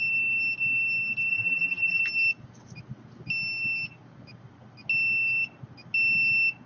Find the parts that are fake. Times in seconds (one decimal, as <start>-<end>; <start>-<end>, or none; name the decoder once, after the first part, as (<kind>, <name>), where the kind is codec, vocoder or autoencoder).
1.3-2.0 (vocoder, BigVGAN v2)